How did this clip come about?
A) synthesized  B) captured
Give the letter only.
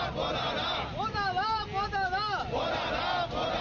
B